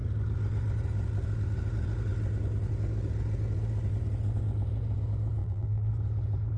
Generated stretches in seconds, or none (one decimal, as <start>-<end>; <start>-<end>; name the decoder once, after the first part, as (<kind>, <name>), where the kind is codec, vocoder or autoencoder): 5.4-5.9 (vocoder, BigVGAN v2)